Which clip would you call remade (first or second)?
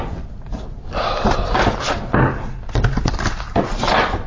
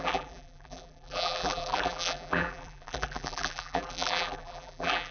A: second